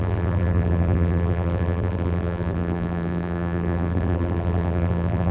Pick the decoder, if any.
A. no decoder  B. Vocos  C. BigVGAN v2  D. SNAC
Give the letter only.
C